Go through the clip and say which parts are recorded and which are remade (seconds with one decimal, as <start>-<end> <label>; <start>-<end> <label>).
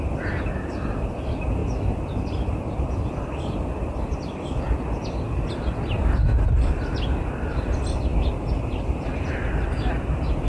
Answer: 0.0-10.5 recorded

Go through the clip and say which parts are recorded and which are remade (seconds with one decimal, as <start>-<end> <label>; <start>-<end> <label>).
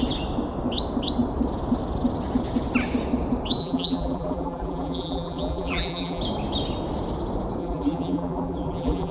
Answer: 0.0-3.6 recorded; 3.6-6.2 remade; 6.2-7.6 recorded; 7.6-9.1 remade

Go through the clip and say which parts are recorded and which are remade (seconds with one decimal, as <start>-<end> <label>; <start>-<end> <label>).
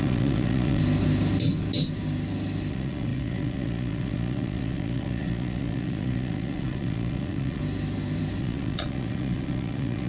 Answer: 0.0-0.8 remade; 0.8-2.7 recorded; 2.7-7.6 remade; 7.6-8.4 recorded; 8.4-10.1 remade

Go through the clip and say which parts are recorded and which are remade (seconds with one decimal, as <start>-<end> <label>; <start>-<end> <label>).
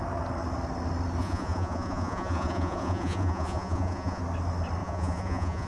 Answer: 0.0-1.2 recorded; 1.2-4.2 remade; 4.2-4.8 recorded; 4.8-5.7 remade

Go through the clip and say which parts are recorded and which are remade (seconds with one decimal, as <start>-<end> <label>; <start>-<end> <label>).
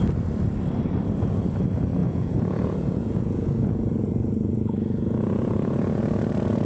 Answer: 0.0-2.0 recorded; 2.0-6.0 remade; 6.0-6.7 recorded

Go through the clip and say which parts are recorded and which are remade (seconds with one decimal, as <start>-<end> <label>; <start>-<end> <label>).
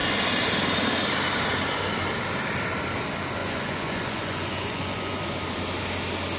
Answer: 0.0-3.4 recorded; 3.4-5.2 remade; 5.2-6.4 recorded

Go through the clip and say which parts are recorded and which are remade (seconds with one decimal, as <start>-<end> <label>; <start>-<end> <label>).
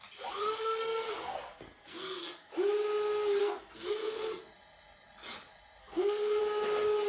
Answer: 0.0-0.4 recorded; 0.4-2.5 remade; 2.5-3.4 recorded; 3.4-4.3 remade; 4.3-5.8 recorded; 5.8-6.4 remade; 6.4-7.1 recorded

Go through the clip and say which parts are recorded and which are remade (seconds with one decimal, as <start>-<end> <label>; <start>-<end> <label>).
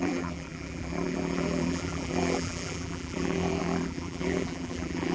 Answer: 0.0-5.1 remade